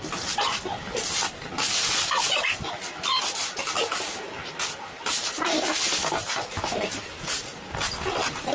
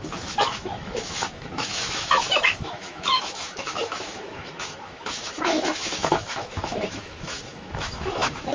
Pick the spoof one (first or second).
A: second